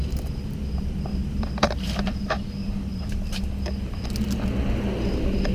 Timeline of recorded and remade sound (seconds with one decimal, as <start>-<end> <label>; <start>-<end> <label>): 0.0-1.1 recorded; 1.1-2.2 remade; 2.2-2.9 recorded; 2.9-3.4 remade; 3.4-5.5 recorded